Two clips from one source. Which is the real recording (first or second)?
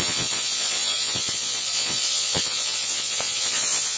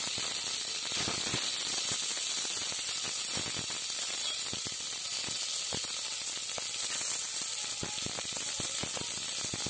second